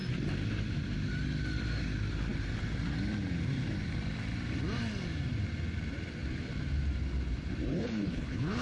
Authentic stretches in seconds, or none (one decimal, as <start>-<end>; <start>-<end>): 0.0-7.7